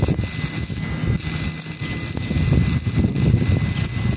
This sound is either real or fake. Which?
real